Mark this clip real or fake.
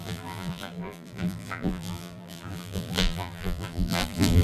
fake